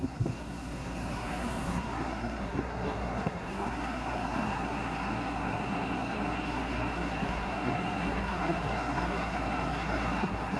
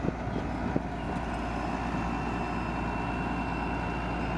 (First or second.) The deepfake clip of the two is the first